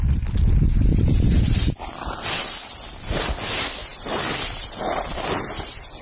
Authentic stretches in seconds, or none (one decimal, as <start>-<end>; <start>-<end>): 0.0-3.9; 4.8-6.0